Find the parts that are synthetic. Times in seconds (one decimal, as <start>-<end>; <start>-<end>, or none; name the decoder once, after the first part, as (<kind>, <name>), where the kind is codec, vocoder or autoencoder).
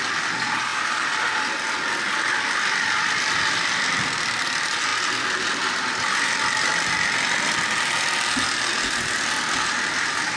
none